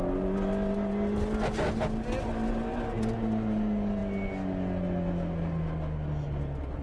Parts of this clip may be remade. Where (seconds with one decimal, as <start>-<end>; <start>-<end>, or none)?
none